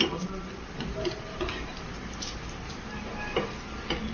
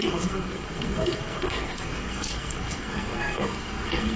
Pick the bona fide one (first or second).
first